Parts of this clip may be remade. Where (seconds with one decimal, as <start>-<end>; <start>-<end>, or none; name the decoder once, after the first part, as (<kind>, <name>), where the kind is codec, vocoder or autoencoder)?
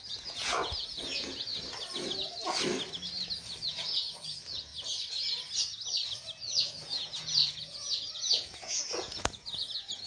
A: 0.0-1.5 (vocoder, Vocos); 3.7-4.7; 6.4-10.1